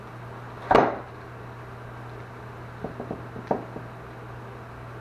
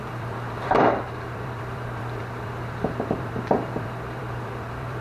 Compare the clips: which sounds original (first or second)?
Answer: first